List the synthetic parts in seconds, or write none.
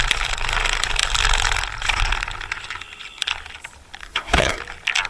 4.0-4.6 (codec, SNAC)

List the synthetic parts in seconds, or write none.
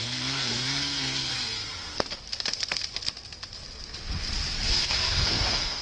0.0-1.3 (codec, SNAC); 4.8-5.8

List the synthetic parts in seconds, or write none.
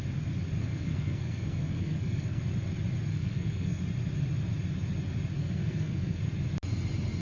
0.6-2.4 (codec, SNAC); 3.1-3.8; 5.4-6.2